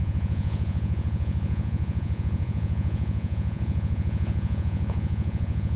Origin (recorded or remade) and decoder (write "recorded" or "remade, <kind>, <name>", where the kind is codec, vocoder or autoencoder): remade, vocoder, Vocos